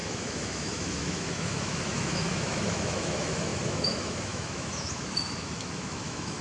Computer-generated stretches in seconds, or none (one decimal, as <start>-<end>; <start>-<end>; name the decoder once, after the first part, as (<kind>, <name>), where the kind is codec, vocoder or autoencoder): 0.0-6.4 (autoencoder, DAC-VAE)